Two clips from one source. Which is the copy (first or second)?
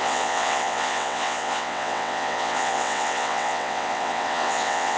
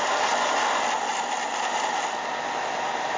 first